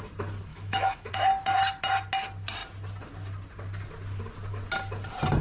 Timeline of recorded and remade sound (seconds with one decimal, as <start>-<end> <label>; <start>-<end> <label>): 0.0-0.5 recorded; 0.5-1.1 remade; 1.1-5.4 recorded